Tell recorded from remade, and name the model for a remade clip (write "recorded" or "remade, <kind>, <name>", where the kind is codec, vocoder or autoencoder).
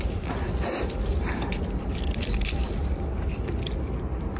remade, vocoder, BigVGAN v2